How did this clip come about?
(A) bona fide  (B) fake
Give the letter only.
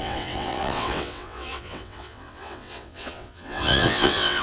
B